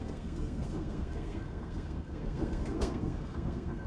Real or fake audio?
fake